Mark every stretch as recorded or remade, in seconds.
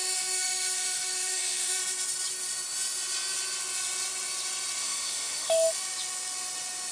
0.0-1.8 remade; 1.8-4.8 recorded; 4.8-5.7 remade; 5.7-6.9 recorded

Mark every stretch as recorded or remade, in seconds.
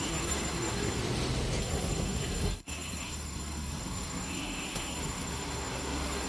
0.0-1.0 remade; 1.0-1.6 recorded; 1.6-6.3 remade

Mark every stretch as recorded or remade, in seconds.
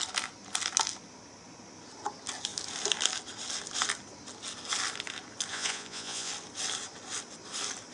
0.0-5.5 recorded; 5.5-6.3 remade; 6.3-7.9 recorded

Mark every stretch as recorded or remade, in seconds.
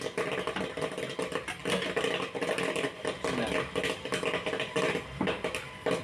0.0-6.0 recorded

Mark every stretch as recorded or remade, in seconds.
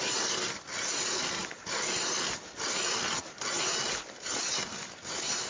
0.0-5.5 recorded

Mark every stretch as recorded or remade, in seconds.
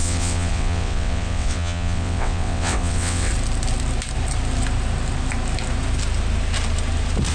0.0-3.3 remade; 3.3-7.3 recorded